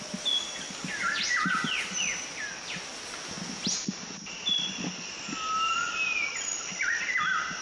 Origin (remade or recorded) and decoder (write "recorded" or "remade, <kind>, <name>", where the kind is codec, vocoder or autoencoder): recorded